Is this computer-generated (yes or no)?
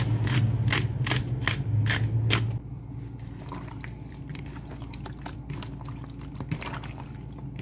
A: no